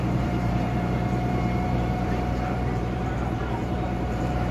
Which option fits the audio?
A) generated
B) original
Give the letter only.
A